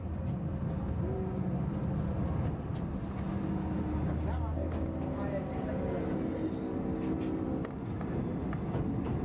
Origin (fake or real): real